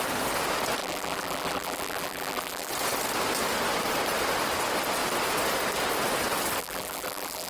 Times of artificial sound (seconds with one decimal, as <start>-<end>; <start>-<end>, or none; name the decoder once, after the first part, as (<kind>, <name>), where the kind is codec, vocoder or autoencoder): 0.8-2.7 (vocoder, BigVGAN v2); 6.6-7.5